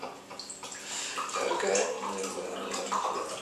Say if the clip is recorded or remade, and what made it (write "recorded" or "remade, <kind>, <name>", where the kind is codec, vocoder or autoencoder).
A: recorded